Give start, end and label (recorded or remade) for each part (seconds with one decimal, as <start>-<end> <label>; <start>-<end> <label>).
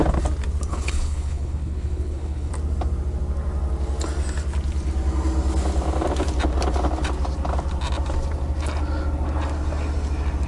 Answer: 0.0-0.7 recorded; 0.7-2.5 remade; 2.5-10.5 recorded